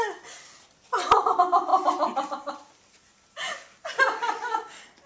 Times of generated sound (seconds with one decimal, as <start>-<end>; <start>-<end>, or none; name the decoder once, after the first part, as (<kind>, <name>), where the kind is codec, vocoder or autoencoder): none